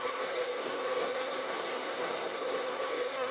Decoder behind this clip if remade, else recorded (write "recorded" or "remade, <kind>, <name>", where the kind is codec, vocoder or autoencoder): remade, codec, SNAC